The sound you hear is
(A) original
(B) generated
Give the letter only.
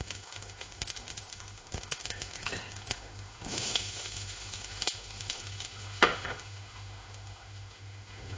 B